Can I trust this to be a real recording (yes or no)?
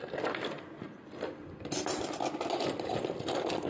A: yes